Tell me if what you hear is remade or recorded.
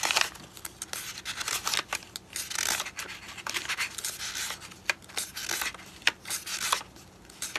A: recorded